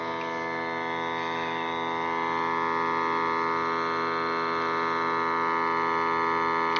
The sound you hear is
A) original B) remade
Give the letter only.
A